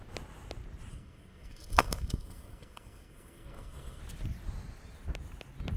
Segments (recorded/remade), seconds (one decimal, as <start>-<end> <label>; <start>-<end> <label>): 0.0-0.9 recorded; 0.9-4.0 remade; 4.0-5.8 recorded